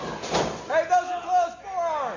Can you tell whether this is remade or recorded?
recorded